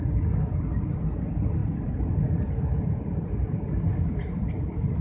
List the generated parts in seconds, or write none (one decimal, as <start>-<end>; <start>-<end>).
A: 1.6-4.6

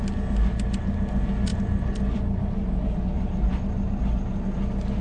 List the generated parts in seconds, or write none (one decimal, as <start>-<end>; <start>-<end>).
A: 1.5-3.0